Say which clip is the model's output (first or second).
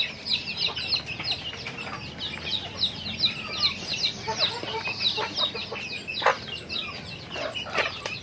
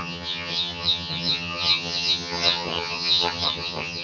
second